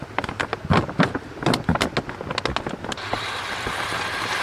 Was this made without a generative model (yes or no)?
yes